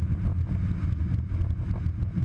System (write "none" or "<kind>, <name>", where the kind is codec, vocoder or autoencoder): none